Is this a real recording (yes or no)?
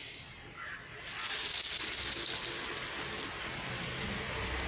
yes